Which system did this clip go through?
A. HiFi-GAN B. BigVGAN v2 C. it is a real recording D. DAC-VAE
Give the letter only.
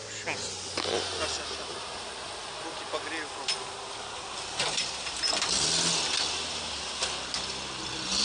C